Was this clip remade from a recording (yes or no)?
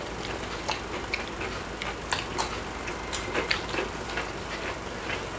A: no